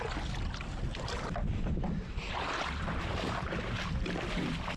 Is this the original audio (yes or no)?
yes